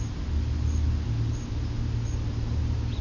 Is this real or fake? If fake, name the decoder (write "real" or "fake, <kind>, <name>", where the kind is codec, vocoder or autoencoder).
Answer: real